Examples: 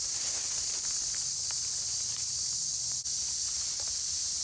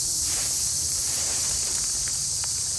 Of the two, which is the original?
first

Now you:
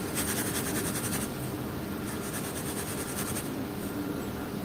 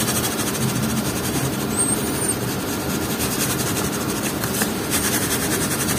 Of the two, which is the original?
first